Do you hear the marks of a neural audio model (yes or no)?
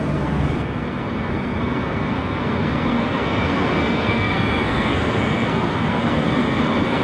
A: yes